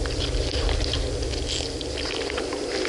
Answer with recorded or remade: recorded